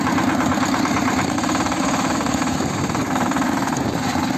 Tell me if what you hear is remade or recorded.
remade